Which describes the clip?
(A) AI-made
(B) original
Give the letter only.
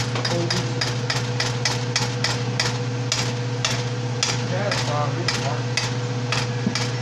B